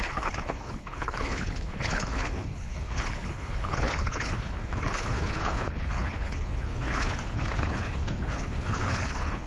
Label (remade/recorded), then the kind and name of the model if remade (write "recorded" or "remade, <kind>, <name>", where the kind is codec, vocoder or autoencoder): remade, codec, HILCodec